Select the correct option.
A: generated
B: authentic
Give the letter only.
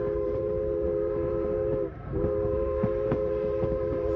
A